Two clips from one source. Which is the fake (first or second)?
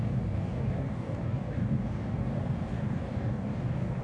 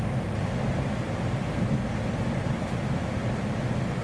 first